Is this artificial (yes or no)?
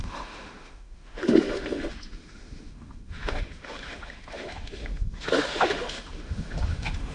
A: yes